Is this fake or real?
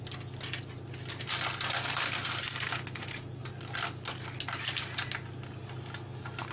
real